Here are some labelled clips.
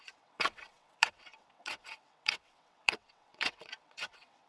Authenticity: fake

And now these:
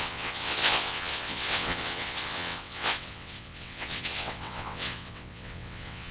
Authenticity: fake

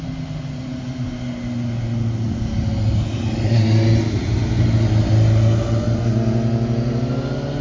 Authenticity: real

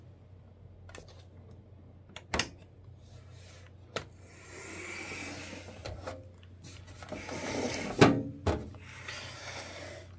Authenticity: real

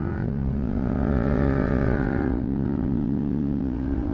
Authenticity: fake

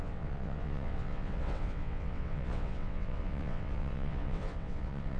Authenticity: fake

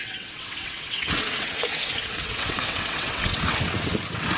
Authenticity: fake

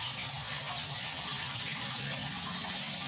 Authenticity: real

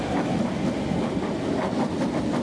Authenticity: real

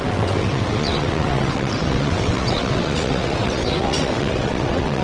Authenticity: fake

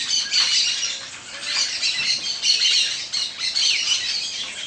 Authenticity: real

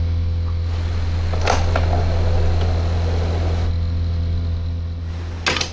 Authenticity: real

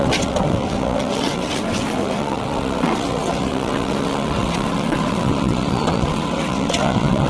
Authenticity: fake